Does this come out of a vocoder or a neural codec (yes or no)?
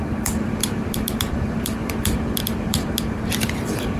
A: yes